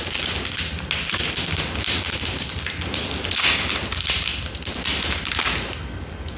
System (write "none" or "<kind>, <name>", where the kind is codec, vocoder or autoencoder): none